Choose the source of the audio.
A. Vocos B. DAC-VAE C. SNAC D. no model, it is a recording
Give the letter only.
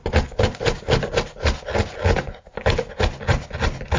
D